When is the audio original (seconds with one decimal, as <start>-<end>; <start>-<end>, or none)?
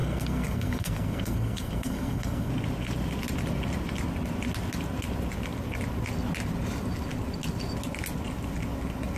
2.5-9.2